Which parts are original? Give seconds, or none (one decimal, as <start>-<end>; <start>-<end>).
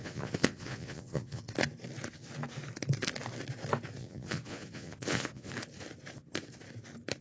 1.4-4.0; 5.5-7.2